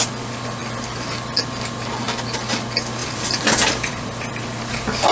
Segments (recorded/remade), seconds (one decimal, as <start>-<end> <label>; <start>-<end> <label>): 0.0-3.0 recorded; 3.0-4.4 remade; 4.4-5.1 recorded